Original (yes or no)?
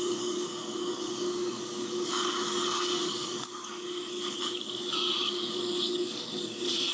no